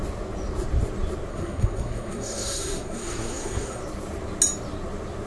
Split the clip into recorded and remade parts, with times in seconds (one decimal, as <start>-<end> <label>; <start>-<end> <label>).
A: 0.0-1.3 recorded; 1.3-3.8 remade; 3.8-5.3 recorded